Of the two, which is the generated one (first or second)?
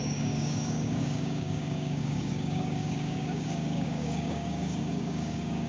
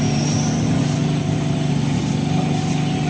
first